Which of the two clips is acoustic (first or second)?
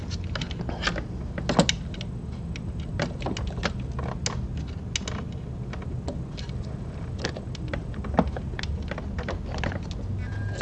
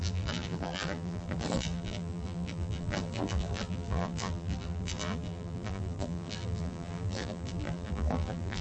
first